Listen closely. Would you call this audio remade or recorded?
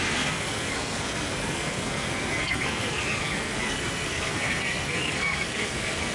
remade